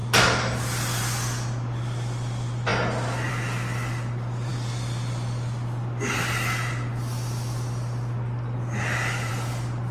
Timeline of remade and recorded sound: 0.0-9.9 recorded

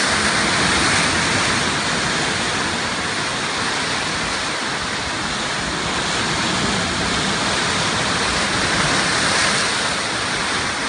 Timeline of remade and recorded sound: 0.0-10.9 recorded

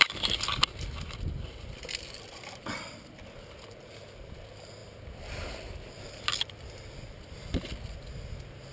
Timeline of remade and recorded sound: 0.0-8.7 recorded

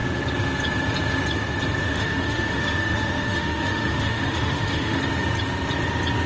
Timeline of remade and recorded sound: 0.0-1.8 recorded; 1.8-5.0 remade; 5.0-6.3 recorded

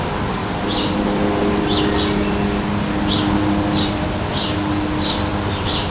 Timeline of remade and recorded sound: 0.0-5.9 recorded

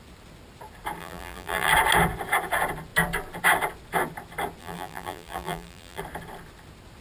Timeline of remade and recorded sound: 0.0-1.0 recorded; 1.0-1.7 remade; 1.7-4.6 recorded; 4.6-6.0 remade; 6.0-7.0 recorded